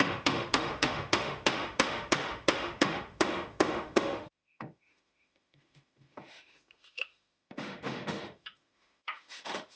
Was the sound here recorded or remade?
remade